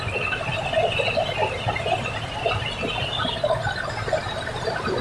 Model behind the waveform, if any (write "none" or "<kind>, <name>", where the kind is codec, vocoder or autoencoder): none